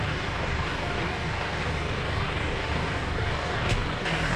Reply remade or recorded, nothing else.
remade